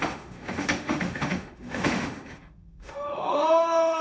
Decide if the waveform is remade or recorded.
remade